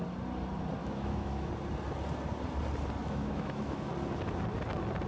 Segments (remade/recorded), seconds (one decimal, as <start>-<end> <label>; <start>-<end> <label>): 0.0-0.8 recorded; 0.8-1.5 remade; 1.5-3.0 recorded; 3.0-3.9 remade; 3.9-5.1 recorded

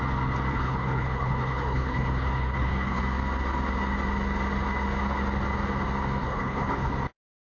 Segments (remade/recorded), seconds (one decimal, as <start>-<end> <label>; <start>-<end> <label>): 0.0-0.5 recorded; 0.5-3.0 remade; 3.0-6.2 recorded; 6.2-6.9 remade; 6.9-7.5 recorded

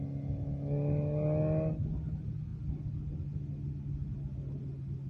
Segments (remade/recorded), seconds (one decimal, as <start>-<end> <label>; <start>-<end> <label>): 0.0-5.1 recorded

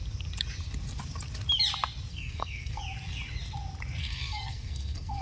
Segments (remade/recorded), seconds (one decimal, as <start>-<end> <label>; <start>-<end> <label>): 0.0-2.1 recorded; 2.1-2.8 remade; 2.8-4.0 recorded; 4.0-5.2 remade

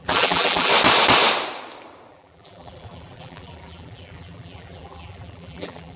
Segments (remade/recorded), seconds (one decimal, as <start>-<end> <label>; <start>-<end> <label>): 0.0-0.7 remade; 0.7-2.1 recorded; 2.1-6.0 remade